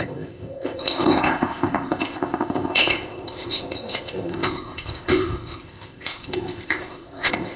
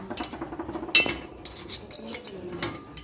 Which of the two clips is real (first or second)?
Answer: second